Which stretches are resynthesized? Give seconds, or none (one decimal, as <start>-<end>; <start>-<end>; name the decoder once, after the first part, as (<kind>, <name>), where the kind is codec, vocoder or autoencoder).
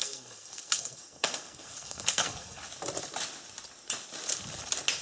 0.0-2.6 (codec, SNAC)